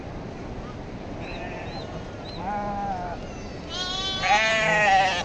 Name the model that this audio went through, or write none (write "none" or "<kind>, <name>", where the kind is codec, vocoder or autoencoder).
none